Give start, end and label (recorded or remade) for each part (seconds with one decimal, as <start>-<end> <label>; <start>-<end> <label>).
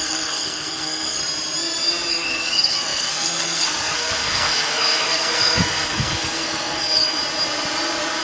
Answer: 0.0-1.2 remade; 1.2-2.1 recorded; 2.1-7.2 remade; 7.2-8.2 recorded